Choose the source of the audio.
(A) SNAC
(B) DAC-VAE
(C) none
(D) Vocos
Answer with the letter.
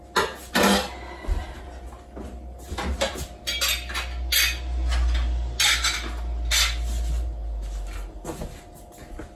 C